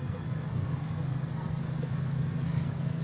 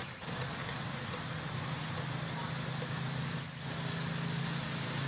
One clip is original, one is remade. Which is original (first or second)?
second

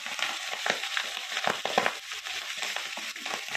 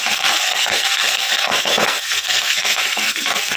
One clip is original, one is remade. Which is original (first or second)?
first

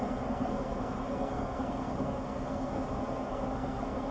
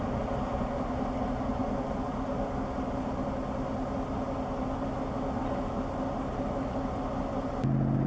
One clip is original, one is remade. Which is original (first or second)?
second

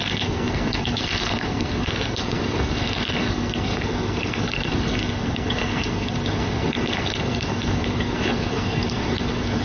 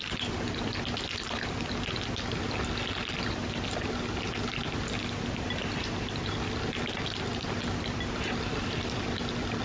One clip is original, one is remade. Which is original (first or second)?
second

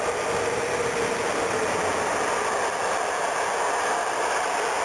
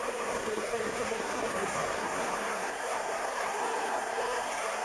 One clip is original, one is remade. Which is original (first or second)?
first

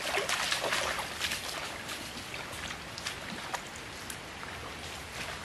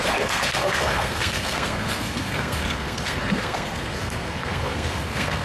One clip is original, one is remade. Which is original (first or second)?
first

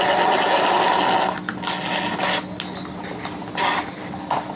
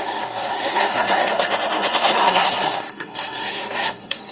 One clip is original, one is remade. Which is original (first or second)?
first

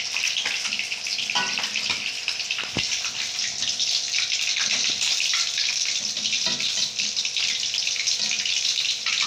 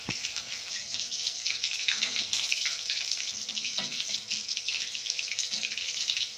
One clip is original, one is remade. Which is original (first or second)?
first